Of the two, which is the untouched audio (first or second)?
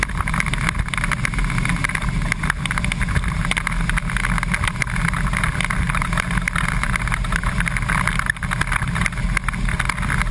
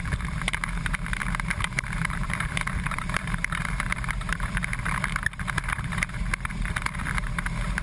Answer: first